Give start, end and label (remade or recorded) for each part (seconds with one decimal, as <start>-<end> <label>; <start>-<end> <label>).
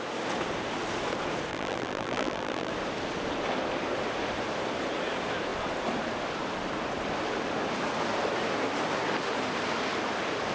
0.0-1.5 recorded; 1.5-2.7 remade; 2.7-10.5 recorded